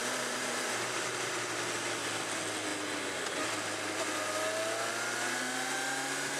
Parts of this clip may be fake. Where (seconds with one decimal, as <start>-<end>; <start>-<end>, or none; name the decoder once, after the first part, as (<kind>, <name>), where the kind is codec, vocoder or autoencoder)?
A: 0.0-1.3 (vocoder, BigVGAN v2)